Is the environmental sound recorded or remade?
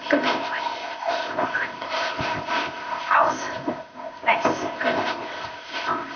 remade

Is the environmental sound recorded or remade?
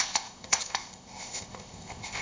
remade